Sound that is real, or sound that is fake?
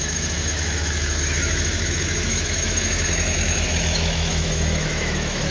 fake